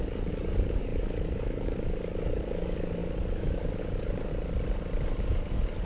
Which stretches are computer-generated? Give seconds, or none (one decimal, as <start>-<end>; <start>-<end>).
0.0-4.3; 5.2-5.8